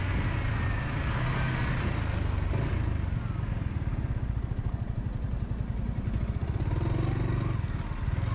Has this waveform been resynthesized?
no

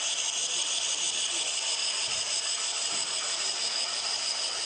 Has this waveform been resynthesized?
no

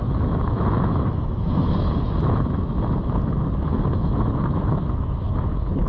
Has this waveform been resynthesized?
yes